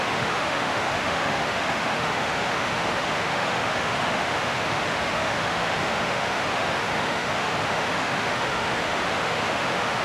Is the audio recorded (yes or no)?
no